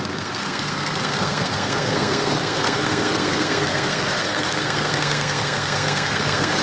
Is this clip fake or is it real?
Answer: fake